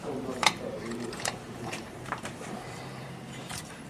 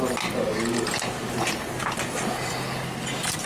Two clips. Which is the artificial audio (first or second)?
first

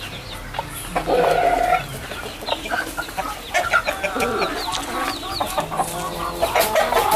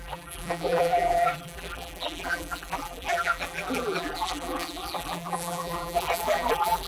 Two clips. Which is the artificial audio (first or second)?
second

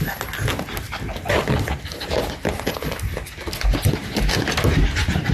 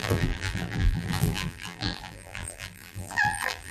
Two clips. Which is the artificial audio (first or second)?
second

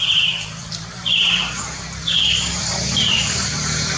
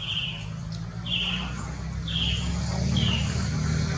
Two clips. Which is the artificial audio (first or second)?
first